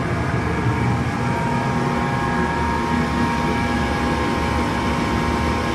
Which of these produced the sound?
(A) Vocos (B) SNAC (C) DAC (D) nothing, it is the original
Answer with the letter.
D